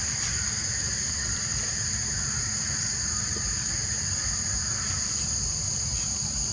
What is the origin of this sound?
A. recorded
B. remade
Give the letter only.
A